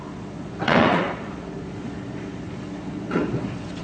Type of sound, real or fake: fake